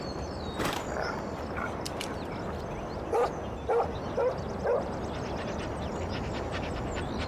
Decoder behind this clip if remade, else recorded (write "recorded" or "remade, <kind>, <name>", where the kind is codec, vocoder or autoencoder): recorded